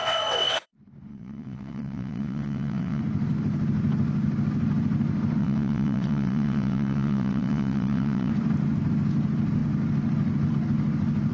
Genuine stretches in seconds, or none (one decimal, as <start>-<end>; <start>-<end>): 0.7-1.1; 3.0-5.4; 8.3-11.3